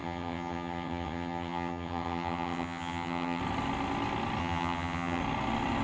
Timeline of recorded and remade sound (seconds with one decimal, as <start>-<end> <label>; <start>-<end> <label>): 0.0-3.4 remade; 3.4-4.4 recorded; 4.4-5.2 remade; 5.2-5.8 recorded